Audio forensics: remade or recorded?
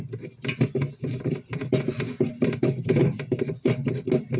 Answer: recorded